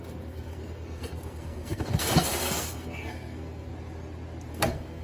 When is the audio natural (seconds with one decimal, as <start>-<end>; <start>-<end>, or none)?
3.7-4.5